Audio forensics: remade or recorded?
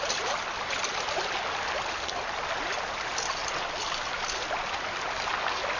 recorded